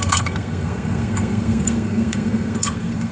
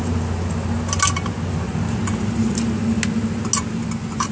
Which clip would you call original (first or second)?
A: second